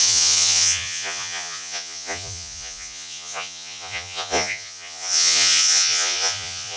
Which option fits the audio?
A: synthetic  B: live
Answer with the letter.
A